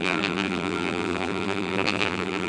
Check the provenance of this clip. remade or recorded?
remade